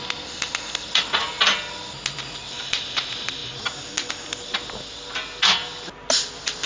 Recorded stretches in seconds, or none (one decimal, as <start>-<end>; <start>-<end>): 0.0-6.7